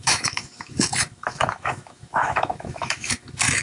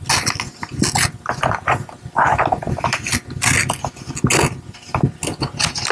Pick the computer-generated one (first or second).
first